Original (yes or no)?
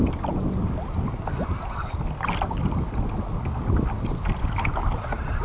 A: yes